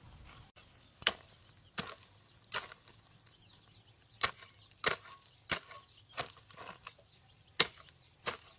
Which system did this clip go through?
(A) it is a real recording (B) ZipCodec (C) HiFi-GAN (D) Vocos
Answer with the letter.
A